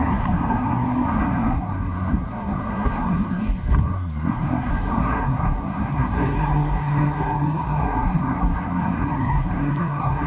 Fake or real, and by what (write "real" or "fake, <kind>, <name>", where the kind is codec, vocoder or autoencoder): fake, codec, SNAC